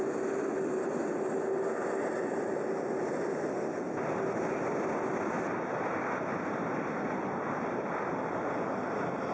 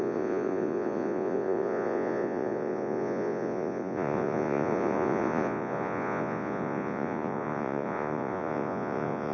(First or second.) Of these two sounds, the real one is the first